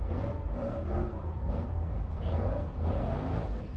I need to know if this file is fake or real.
fake